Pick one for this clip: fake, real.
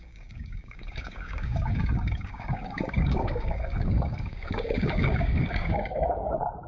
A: fake